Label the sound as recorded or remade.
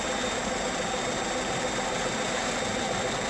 recorded